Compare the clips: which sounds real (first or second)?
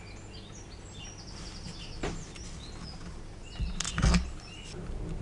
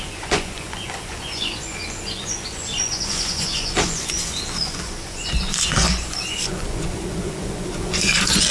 first